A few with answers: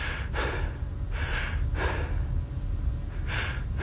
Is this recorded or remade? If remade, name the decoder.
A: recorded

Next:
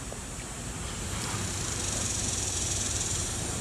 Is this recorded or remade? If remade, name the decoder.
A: remade, vocoder, BigVGAN v2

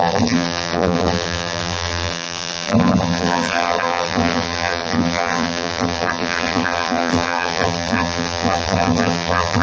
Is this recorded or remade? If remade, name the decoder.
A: remade, vocoder, BigVGAN v2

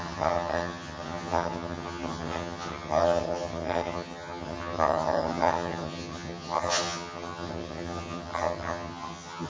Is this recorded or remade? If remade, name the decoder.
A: remade, vocoder, HiFi-GAN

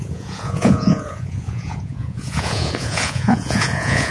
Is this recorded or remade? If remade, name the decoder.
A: remade, vocoder, Vocos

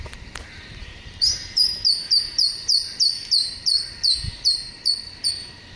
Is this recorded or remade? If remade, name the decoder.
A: remade, vocoder, BigVGAN v2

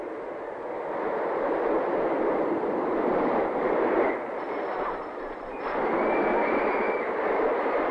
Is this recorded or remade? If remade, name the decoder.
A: remade, vocoder, BigVGAN v2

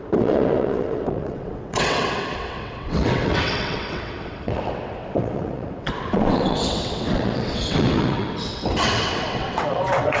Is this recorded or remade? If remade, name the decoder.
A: remade, vocoder, WaveNeXt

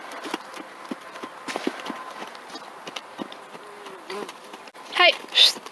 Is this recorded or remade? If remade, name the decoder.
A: recorded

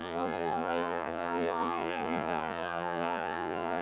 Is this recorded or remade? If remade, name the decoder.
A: remade, vocoder, Vocos